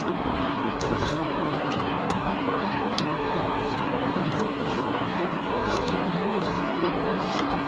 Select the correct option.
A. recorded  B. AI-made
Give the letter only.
B